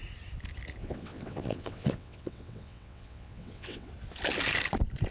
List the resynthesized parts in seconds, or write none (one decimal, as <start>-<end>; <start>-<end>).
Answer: 0.8-3.9